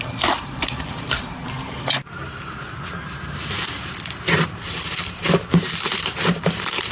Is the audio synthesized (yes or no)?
yes